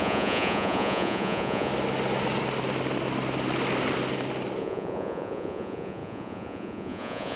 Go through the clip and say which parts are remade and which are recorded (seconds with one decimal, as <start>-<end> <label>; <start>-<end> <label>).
0.0-1.7 remade; 1.7-4.6 recorded; 4.6-7.4 remade